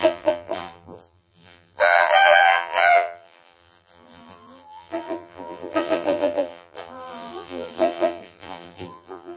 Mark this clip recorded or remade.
remade